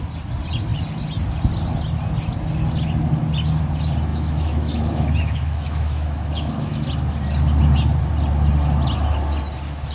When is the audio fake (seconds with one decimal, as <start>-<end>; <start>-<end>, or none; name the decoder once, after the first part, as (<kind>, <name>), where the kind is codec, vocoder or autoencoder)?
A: 4.1-6.8 (autoencoder, DAC-VAE)